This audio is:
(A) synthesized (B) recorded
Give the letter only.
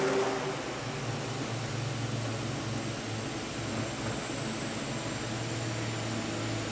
B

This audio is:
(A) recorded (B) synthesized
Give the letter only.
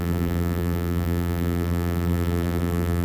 B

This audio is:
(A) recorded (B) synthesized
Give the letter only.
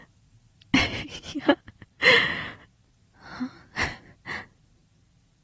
A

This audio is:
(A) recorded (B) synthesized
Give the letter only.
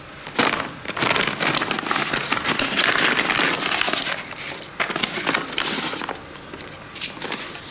A